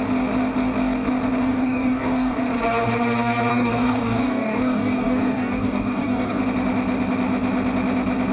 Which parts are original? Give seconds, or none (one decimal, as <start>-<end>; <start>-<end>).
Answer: 0.0-1.4; 2.4-3.5; 6.4-8.3